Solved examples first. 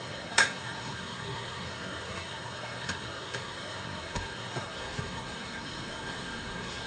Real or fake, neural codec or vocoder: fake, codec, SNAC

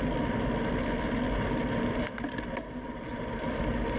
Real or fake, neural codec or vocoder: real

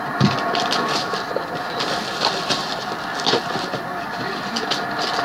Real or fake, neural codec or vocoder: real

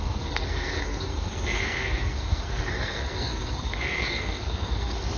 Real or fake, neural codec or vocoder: fake, codec, SNAC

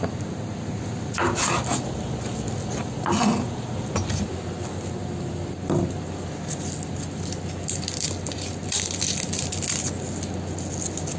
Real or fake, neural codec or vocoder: real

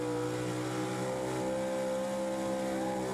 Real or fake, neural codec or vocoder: real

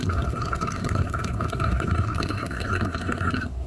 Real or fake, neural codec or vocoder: fake, codec, SNAC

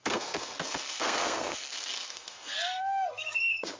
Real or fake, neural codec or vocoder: fake, codec, SNAC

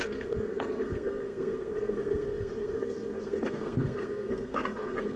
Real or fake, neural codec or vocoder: fake, codec, SNAC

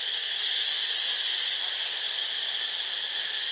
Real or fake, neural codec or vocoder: real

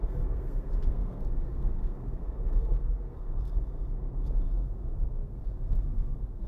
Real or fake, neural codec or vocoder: fake, codec, SNAC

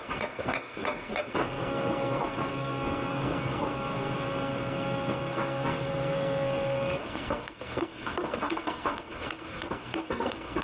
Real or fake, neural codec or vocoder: fake, codec, SNAC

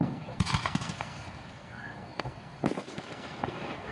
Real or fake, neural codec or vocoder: fake, codec, SNAC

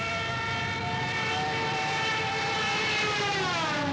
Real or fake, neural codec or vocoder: real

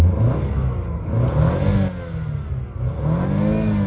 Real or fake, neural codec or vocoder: real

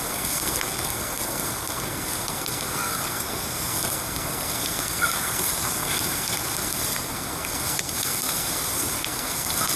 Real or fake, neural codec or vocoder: fake, codec, SNAC